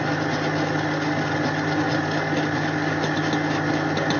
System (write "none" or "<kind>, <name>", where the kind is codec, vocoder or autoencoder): none